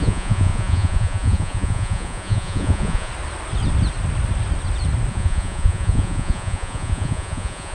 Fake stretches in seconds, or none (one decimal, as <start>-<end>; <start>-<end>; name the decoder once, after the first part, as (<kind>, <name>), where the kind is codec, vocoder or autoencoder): 0.0-3.1 (vocoder, Vocos); 5.1-7.7